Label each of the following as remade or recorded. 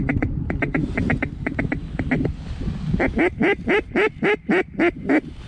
recorded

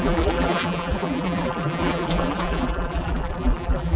remade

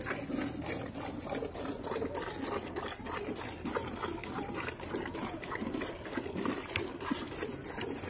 recorded